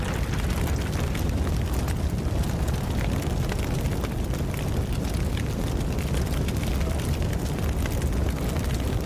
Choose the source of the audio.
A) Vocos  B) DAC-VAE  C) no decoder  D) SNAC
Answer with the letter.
C